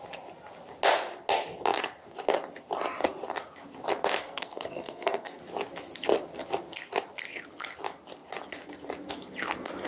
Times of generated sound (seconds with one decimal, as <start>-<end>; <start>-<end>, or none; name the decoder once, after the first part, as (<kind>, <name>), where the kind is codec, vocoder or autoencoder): 4.2-5.4 (codec, SNAC)